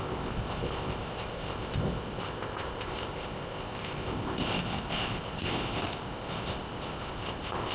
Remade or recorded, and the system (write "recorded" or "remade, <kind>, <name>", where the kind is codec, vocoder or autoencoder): remade, codec, ZipCodec